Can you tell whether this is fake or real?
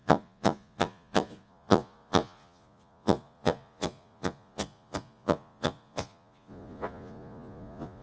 fake